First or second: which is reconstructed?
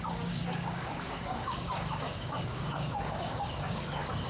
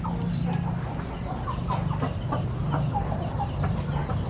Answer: first